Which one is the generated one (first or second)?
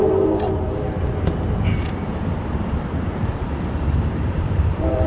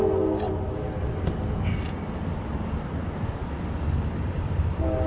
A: first